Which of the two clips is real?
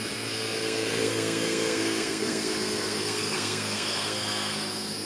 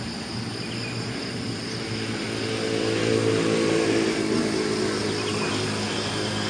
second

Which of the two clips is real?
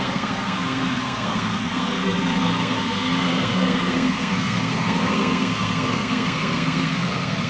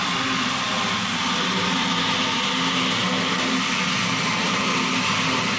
second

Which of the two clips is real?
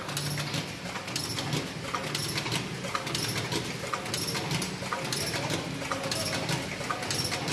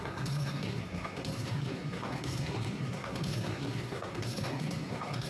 first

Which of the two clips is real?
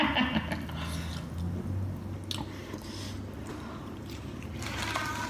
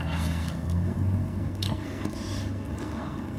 first